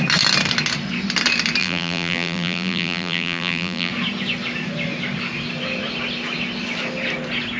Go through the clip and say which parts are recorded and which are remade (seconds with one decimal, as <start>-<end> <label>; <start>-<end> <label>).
0.0-1.6 recorded; 1.6-3.9 remade; 3.9-7.6 recorded